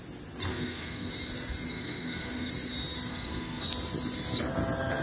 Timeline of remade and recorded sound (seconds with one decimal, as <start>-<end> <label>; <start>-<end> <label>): 0.0-0.5 recorded; 0.5-1.1 remade; 1.1-1.7 recorded; 1.7-2.5 remade; 2.5-3.1 recorded; 3.1-3.7 remade; 3.7-5.0 recorded

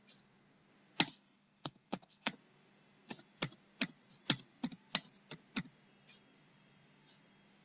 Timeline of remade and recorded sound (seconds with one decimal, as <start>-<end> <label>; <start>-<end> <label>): 0.0-1.1 recorded; 1.1-2.3 remade; 2.3-7.6 recorded

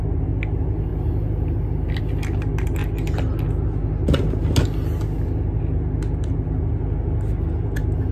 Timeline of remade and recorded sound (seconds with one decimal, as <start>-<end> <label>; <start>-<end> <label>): 0.0-8.1 recorded

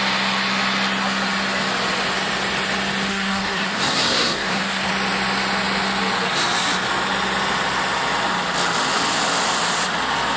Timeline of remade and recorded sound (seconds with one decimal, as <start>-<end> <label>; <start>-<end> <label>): 0.0-3.1 recorded; 3.1-4.9 remade; 4.9-10.4 recorded

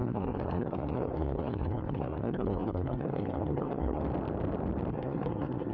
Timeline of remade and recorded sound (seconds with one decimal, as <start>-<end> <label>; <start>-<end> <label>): 0.0-4.0 remade; 4.0-4.9 recorded; 4.9-5.7 remade

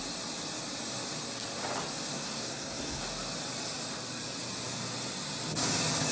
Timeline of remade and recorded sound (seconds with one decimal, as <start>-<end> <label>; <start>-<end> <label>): 0.0-2.1 recorded; 2.1-3.0 remade; 3.0-6.1 recorded